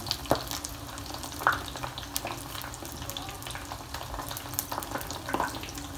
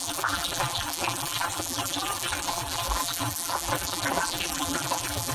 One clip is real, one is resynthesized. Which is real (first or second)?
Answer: first